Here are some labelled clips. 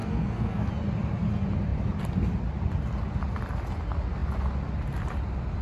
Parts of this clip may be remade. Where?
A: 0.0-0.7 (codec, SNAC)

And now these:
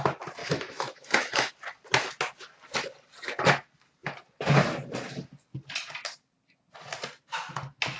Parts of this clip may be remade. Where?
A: 0.4-1.5 (autoencoder, DAC-VAE)

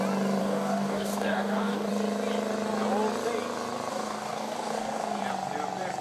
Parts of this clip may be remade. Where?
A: 0.4-1.9 (codec, DAC); 3.9-5.2

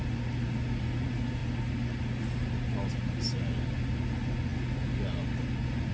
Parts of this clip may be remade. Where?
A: none

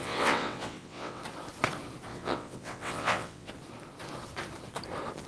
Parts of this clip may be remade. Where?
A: 0.0-1.2 (vocoder, WaveNeXt); 2.1-3.5

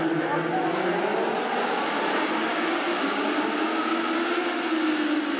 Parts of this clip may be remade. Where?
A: 2.5-3.5 (codec, DAC)